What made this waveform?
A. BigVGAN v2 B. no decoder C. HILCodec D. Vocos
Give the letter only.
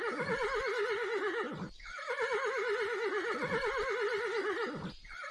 B